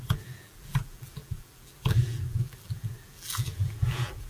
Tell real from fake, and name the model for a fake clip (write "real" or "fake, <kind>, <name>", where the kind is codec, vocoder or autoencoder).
fake, vocoder, BigVGAN v2